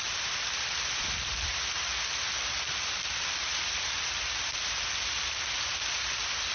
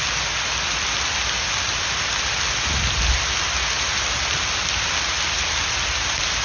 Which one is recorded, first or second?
second